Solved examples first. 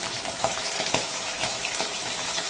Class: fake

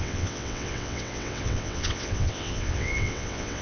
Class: fake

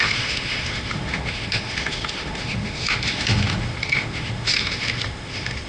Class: fake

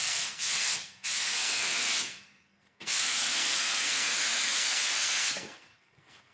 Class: fake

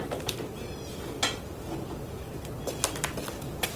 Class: real